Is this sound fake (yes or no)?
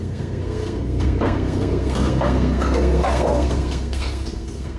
yes